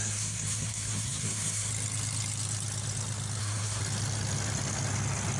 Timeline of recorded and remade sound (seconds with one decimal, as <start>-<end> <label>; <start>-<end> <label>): 0.0-1.7 remade; 1.7-3.4 recorded; 3.4-3.8 remade; 3.8-5.4 recorded